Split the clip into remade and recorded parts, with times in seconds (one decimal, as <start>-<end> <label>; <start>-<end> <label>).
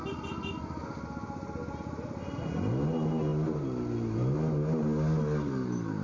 0.0-6.0 recorded